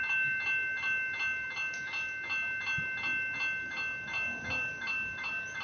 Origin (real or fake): real